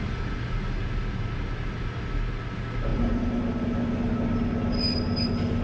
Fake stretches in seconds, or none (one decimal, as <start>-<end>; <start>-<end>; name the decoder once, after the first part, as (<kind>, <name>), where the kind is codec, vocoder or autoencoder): none